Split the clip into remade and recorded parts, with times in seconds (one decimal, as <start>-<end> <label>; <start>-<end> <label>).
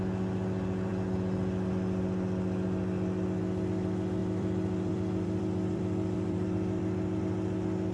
0.0-4.2 recorded; 4.2-7.2 remade; 7.2-7.9 recorded